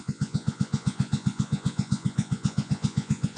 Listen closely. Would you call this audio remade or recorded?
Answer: remade